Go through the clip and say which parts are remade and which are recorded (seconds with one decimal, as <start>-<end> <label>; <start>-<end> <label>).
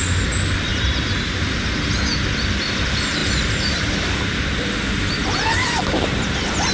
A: 0.0-0.7 recorded; 0.7-1.4 remade; 1.4-3.2 recorded; 3.2-4.3 remade; 4.3-6.7 recorded